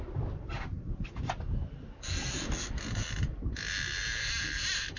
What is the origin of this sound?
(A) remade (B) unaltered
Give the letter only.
B